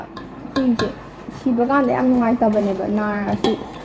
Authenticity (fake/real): fake